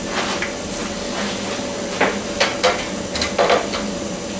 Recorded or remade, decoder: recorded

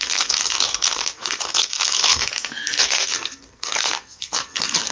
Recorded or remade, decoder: remade, codec, SNAC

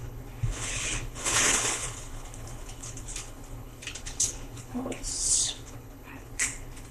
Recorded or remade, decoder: remade, codec, HILCodec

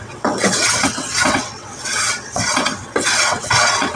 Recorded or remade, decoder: remade, vocoder, WaveNeXt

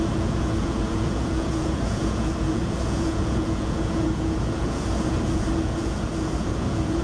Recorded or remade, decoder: remade, vocoder, Vocos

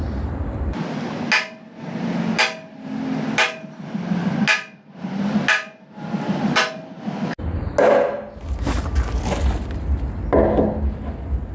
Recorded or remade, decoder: recorded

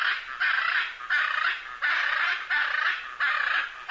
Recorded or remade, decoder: recorded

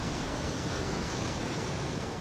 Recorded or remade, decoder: remade, codec, SNAC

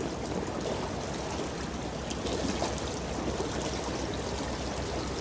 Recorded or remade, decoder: recorded